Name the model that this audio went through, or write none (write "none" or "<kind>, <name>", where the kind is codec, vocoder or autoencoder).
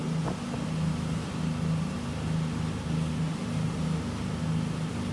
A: none